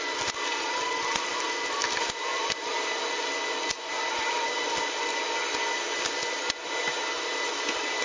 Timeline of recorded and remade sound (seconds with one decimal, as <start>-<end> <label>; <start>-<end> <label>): 0.0-8.0 recorded